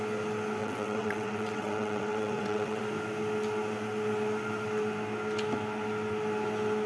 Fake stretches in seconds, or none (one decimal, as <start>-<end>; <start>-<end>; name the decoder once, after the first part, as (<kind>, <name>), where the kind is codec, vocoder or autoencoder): 0.6-2.8 (vocoder, WaveNeXt)

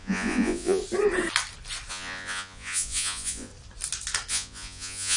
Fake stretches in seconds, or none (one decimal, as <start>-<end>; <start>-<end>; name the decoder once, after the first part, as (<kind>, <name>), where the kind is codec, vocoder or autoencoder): 0.0-0.8 (vocoder, Vocos); 1.9-3.5; 4.3-5.2

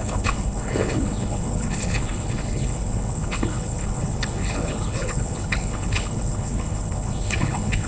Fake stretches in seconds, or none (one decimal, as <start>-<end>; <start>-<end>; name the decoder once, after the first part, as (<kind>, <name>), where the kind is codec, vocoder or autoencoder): 0.0-7.9 (codec, HILCodec)